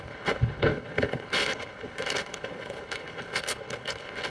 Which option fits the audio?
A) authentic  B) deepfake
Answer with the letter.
B